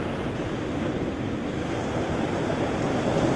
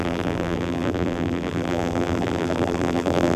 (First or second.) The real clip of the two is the first